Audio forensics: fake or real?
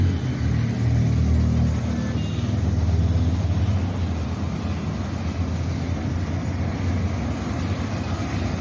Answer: real